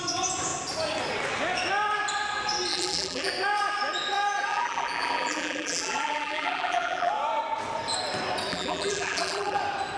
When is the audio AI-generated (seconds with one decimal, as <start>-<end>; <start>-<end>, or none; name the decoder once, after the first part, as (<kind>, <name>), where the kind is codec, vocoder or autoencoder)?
2.7-3.3 (vocoder, BigVGAN v2); 4.5-7.1; 8.5-9.6